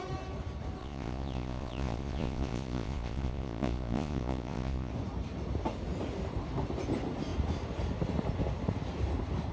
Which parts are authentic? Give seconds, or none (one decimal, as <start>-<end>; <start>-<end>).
0.0-0.8; 4.9-9.5